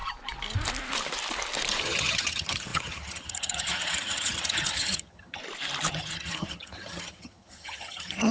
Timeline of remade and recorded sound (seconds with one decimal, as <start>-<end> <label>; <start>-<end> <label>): 0.0-1.8 recorded; 1.8-5.4 remade; 5.4-5.9 recorded; 5.9-8.3 remade